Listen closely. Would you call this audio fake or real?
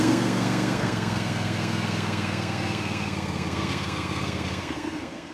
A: fake